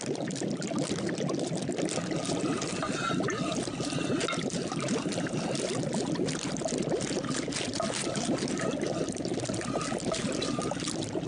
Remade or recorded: recorded